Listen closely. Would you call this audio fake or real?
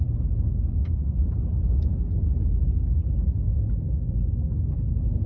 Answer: real